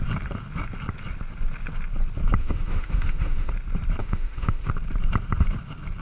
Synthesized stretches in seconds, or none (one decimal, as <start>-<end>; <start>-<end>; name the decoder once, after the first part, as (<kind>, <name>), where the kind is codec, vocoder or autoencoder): 2.4-3.5 (autoencoder, DAC-VAE); 4.0-4.7